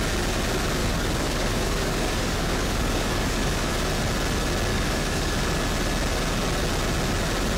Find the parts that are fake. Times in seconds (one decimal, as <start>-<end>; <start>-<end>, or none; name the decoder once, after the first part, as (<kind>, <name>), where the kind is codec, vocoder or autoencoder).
0.8-3.7 (codec, DAC); 4.7-5.5